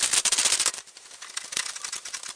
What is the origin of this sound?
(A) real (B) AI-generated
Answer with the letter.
A